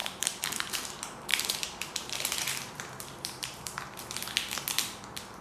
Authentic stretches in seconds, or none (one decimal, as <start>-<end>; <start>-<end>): 0.7-1.3; 4.0-5.4